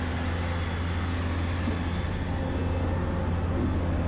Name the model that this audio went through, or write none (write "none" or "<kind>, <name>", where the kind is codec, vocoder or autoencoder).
none